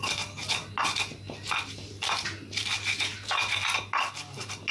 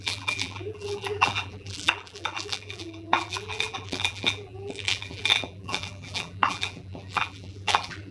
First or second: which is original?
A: first